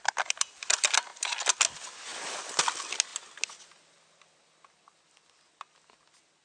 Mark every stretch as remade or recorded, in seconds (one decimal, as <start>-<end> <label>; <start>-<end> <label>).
0.0-6.4 recorded